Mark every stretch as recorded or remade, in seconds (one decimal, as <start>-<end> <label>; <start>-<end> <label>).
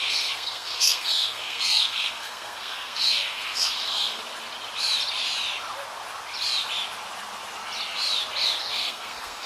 0.0-4.2 remade; 4.2-8.6 recorded; 8.6-9.5 remade